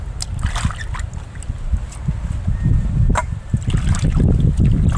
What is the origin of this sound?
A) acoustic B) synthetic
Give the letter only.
A